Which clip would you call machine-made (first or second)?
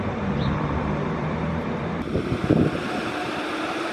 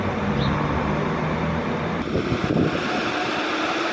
first